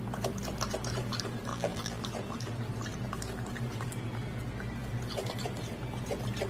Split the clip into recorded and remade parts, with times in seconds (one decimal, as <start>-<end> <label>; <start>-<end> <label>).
0.0-1.5 recorded; 1.5-2.0 remade; 2.0-6.5 recorded